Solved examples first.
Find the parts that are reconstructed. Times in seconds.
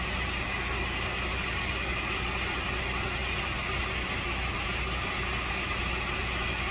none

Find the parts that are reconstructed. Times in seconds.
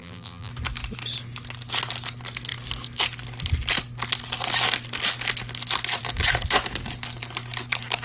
0.0-0.5